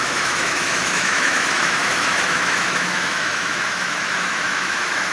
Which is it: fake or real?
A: fake